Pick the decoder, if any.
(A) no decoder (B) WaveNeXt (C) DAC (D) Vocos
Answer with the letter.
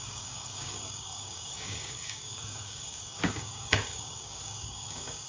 C